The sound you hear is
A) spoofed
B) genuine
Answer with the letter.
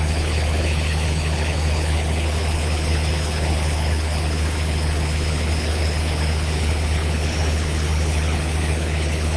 A